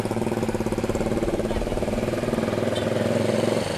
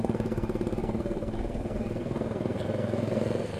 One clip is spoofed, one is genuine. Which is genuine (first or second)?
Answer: first